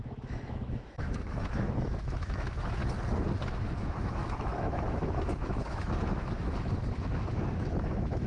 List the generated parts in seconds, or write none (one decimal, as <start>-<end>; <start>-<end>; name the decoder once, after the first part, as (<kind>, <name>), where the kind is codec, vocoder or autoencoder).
0.0-2.8 (autoencoder, DAC-VAE); 3.4-8.3